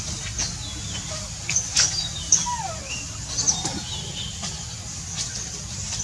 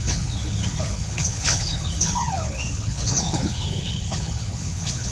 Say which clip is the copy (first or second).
second